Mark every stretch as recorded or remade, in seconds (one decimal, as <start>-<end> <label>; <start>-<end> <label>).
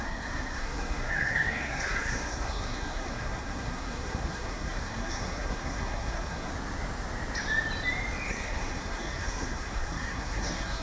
0.0-6.5 remade; 6.5-8.3 recorded; 8.3-10.8 remade